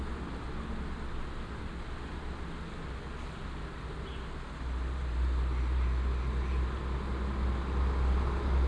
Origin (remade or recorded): recorded